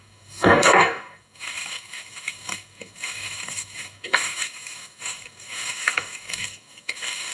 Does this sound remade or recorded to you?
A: remade